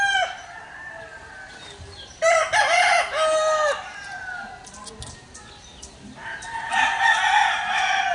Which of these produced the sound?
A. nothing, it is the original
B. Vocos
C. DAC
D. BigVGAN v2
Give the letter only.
A